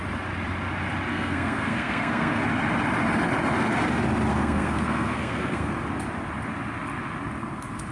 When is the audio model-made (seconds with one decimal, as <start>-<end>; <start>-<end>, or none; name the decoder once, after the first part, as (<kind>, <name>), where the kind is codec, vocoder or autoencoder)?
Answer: 1.1-2.4 (codec, SNAC); 4.3-5.7